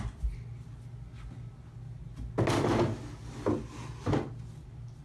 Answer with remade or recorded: recorded